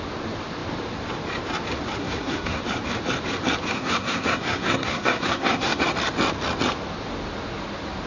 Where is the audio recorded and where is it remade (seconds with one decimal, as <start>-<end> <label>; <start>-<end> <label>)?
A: 0.0-2.0 recorded; 2.0-2.6 remade; 2.6-3.7 recorded; 3.7-5.8 remade; 5.8-8.1 recorded